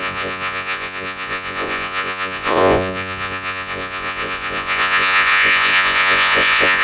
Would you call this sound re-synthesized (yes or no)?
yes